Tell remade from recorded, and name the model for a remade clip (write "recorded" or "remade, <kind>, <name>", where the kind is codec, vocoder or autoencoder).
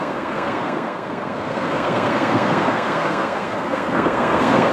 remade, codec, SNAC